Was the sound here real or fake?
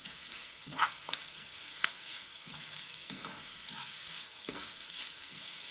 fake